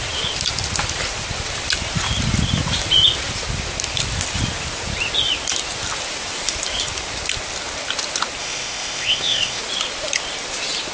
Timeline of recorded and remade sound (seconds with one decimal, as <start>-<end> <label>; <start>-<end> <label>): 0.0-8.4 recorded; 8.4-9.6 remade; 9.6-10.9 recorded